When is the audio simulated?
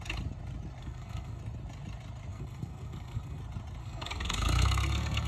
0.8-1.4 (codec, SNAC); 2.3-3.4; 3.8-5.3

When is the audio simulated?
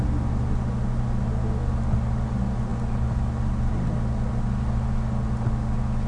none